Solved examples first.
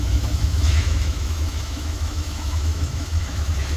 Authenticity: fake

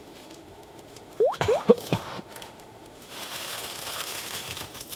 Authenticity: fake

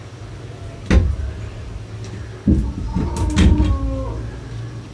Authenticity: real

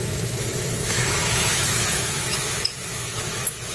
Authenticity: fake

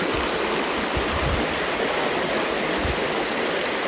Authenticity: real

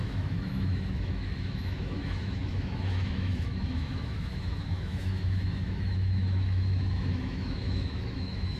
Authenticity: fake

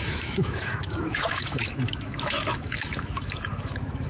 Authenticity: fake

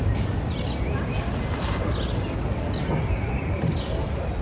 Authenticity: real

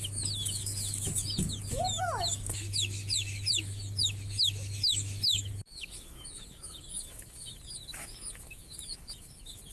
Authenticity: fake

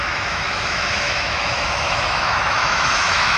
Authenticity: fake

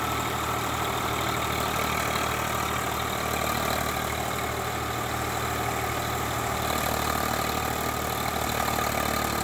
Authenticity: real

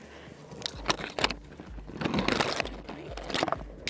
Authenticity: real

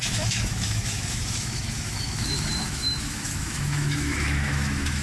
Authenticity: fake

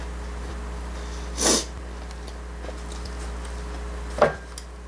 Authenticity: real